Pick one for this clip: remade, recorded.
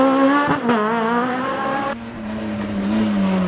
recorded